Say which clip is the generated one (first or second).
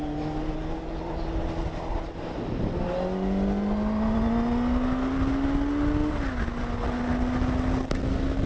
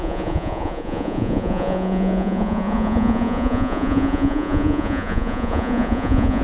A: second